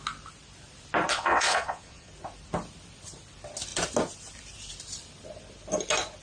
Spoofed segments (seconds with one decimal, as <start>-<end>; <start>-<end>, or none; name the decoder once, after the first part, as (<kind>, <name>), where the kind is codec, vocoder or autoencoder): 1.1-2.1 (vocoder, Vocos)